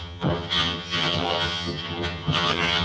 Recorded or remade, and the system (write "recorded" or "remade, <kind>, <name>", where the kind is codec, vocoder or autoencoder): remade, vocoder, HiFi-GAN